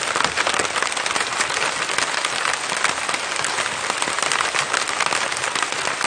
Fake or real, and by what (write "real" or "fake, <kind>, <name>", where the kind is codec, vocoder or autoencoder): real